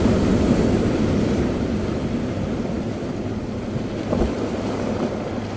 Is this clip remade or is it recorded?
recorded